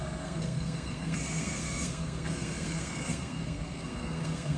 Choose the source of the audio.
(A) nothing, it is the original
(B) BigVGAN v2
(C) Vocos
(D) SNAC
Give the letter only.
D